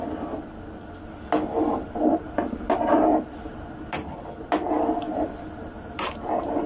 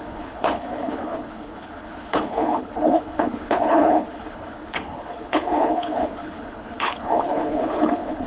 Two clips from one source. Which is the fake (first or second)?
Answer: second